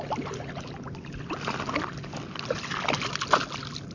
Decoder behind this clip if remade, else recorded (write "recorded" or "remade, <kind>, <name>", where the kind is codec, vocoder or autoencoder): recorded